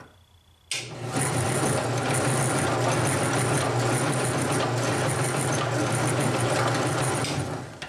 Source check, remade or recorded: recorded